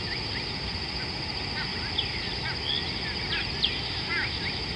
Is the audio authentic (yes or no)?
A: yes